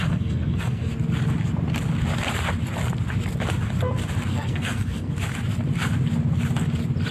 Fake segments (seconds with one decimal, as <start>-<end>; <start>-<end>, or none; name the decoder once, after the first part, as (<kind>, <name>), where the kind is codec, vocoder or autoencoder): 0.0-0.9 (codec, SNAC); 4.3-5.1